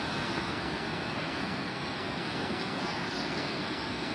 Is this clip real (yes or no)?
no